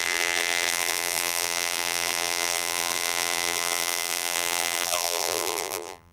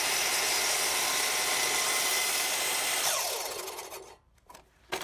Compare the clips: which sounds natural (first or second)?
second